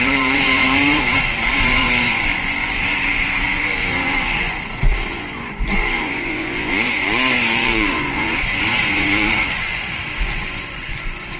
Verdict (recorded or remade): remade